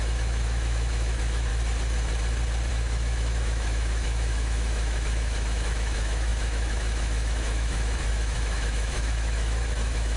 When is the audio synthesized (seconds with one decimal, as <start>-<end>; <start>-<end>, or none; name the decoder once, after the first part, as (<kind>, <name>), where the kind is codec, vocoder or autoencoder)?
0.0-1.5 (autoencoder, DAC-VAE); 2.7-10.2

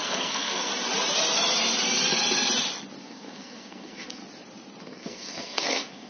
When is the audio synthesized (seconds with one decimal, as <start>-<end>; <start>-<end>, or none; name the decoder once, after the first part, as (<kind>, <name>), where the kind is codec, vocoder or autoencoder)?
0.0-0.7 (codec, SNAC); 3.0-4.2; 4.8-6.1

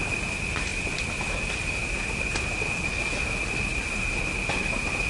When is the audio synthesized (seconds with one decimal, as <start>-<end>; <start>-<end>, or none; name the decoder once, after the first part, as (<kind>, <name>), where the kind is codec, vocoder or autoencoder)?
none

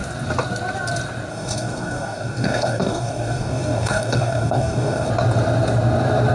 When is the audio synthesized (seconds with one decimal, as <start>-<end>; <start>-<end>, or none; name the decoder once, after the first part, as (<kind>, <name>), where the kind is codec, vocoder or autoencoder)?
1.3-5.1 (codec, DAC)

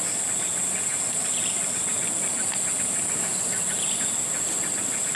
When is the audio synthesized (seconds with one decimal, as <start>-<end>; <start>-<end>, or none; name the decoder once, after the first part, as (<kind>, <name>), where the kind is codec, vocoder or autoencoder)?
none

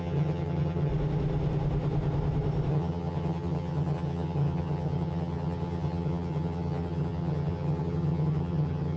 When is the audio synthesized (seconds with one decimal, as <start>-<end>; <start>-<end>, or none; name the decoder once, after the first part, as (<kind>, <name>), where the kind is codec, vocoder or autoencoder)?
0.0-0.9 (vocoder, HiFi-GAN); 2.7-9.0

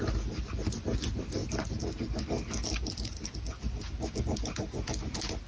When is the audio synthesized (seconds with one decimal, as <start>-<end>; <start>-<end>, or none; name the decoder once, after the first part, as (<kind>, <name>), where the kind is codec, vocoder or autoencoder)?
none

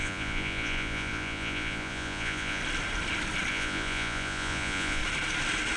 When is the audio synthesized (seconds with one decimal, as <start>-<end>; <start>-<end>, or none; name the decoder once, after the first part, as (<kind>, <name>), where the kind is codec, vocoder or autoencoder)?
0.0-2.6 (vocoder, Vocos); 3.5-5.0